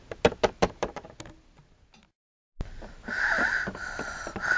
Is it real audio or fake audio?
real